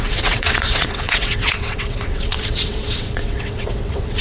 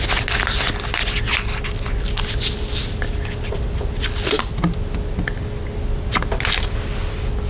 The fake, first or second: first